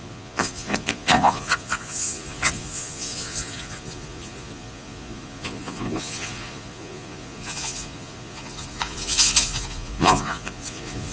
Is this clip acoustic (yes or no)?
no